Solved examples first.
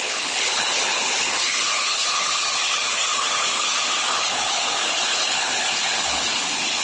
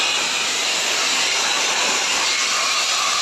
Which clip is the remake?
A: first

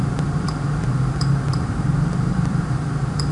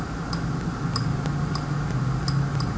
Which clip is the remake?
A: first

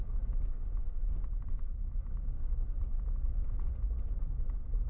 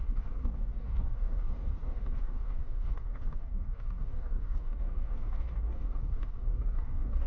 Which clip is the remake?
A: second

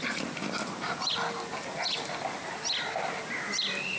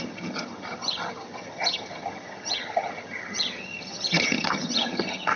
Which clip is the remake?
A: second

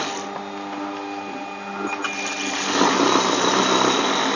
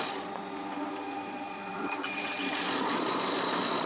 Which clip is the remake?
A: second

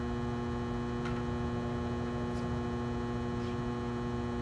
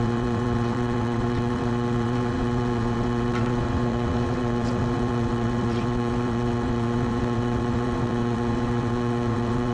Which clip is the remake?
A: second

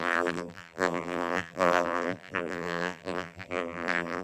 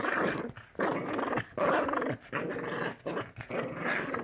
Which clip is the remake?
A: first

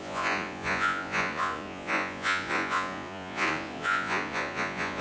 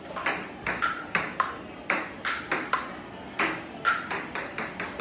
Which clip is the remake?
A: first